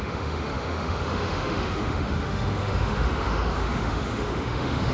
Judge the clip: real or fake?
fake